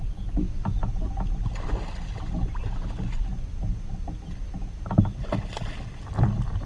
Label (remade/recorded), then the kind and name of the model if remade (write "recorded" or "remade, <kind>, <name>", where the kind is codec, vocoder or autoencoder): recorded